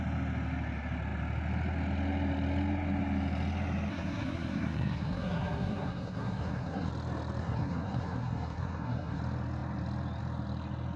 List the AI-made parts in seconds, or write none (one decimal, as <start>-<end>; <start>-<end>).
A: 3.9-6.9; 7.4-9.2

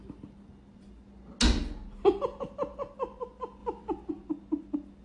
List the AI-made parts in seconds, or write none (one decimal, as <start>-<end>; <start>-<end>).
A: none

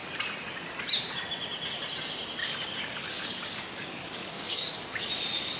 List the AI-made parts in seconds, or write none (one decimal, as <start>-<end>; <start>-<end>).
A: 2.4-5.1